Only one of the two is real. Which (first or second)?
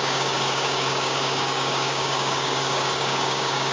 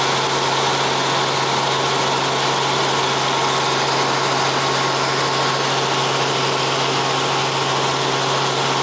second